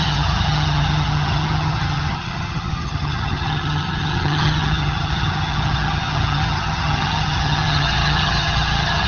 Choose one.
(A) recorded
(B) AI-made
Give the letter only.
B